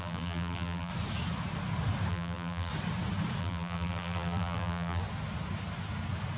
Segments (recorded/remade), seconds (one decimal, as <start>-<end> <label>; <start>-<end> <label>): 0.0-0.9 remade; 0.9-2.1 recorded; 2.1-2.7 remade; 2.7-3.4 recorded; 3.4-5.0 remade; 5.0-6.4 recorded

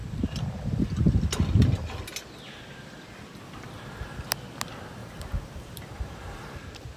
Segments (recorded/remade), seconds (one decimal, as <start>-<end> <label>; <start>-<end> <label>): 0.0-5.0 recorded; 5.0-5.7 remade; 5.7-7.0 recorded

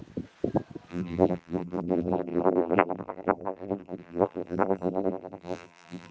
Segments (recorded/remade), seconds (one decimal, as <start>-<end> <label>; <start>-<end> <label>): 0.0-0.9 recorded; 0.9-6.1 remade

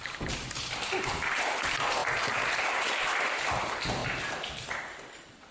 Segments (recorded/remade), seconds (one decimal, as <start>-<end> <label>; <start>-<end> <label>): 0.0-0.6 recorded; 0.6-2.0 remade; 2.0-2.9 recorded; 2.9-4.0 remade; 4.0-4.7 recorded; 4.7-5.5 remade

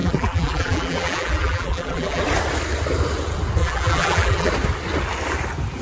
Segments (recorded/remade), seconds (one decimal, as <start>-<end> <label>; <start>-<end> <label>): 0.0-2.2 remade; 2.2-3.6 recorded; 3.6-4.5 remade; 4.5-5.8 recorded

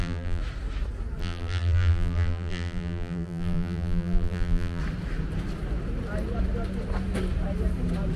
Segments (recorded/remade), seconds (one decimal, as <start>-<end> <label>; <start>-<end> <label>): 0.0-0.4 remade; 0.4-1.2 recorded; 1.2-4.8 remade; 4.8-8.2 recorded

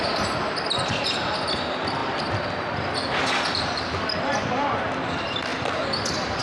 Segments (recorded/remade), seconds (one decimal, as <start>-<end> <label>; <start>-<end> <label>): 0.0-2.0 recorded; 2.0-3.3 remade; 3.3-6.4 recorded

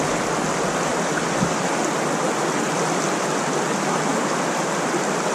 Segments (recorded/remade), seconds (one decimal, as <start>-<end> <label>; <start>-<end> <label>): 0.0-0.9 recorded; 0.9-1.8 remade; 1.8-4.1 recorded; 4.1-5.3 remade